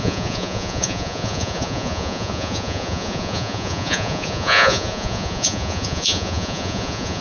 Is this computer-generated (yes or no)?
yes